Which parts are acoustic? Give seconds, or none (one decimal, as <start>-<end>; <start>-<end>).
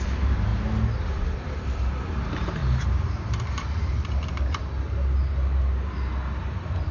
0.5-1.0; 4.6-6.4